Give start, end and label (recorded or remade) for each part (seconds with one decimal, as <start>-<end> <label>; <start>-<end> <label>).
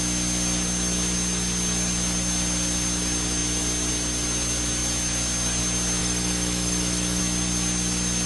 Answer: 0.0-6.0 recorded; 6.0-7.2 remade; 7.2-8.3 recorded